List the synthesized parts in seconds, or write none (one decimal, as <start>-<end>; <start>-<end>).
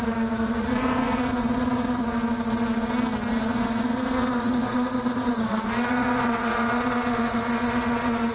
0.0-2.0; 3.3-8.3